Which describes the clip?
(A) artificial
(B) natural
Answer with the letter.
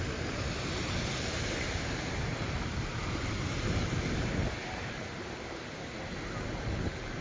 A